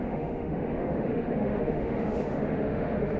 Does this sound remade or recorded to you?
remade